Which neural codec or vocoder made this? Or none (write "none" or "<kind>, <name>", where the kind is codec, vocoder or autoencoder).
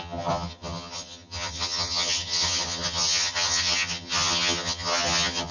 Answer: vocoder, HiFi-GAN